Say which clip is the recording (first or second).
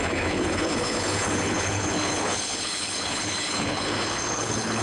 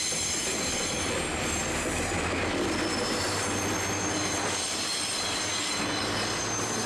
second